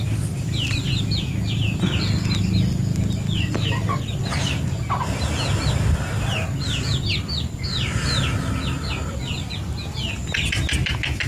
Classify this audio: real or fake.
real